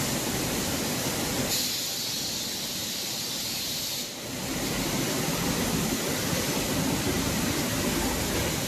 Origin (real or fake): real